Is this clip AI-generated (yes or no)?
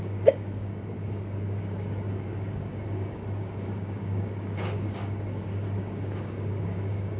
yes